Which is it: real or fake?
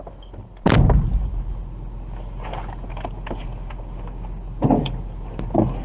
real